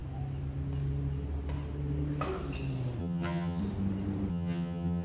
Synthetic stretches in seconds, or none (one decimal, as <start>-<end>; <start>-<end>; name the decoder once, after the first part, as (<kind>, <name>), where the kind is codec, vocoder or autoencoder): 3.0-3.6 (vocoder, HiFi-GAN); 4.3-5.0